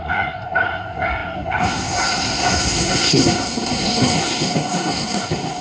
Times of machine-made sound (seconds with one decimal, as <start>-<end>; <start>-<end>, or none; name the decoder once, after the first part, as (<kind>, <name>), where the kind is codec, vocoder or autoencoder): 0.0-5.6 (codec, SNAC)